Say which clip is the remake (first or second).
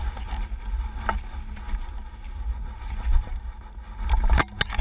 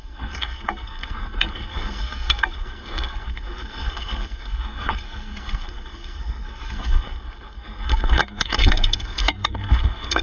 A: second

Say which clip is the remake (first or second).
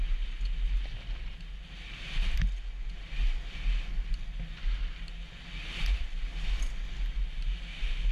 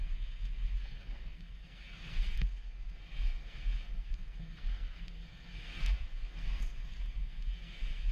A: second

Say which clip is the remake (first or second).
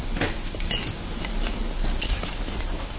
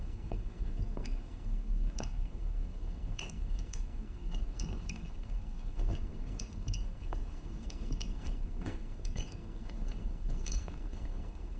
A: second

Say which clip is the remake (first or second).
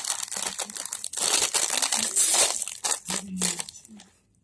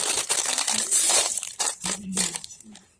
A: second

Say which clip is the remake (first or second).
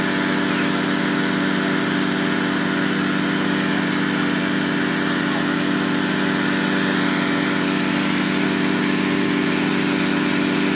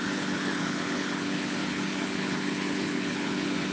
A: second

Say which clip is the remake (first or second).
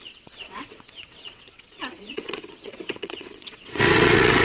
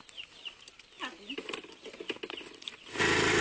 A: first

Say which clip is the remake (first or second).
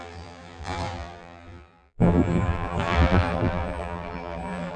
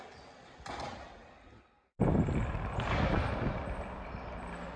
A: first